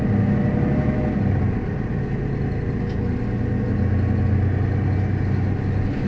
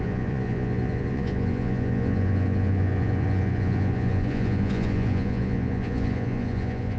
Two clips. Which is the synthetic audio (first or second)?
second